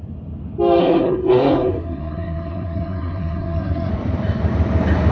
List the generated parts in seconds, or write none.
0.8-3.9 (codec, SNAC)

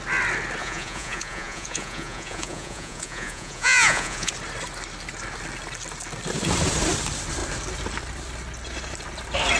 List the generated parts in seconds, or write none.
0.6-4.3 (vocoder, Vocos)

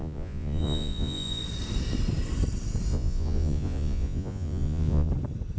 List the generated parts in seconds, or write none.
0.0-1.4 (vocoder, Vocos); 2.9-5.1

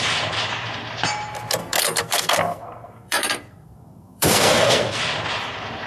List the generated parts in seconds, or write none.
1.6-5.0 (codec, SNAC)

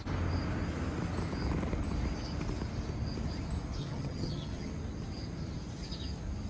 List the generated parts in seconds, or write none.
3.8-4.7 (vocoder, HiFi-GAN)

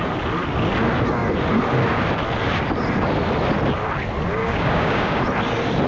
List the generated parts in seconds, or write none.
4.4-5.2 (codec, DAC)

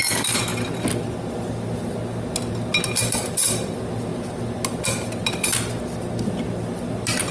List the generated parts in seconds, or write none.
none